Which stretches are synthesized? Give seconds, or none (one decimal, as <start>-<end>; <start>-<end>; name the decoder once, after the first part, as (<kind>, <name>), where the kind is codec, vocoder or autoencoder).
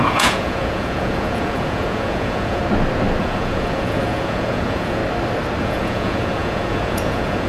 0.0-2.6 (vocoder, Vocos); 3.2-5.0; 5.6-7.5